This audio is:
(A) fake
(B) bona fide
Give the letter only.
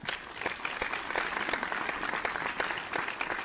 B